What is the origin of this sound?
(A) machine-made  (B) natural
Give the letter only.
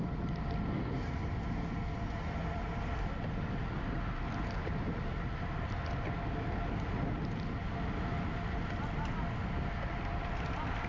B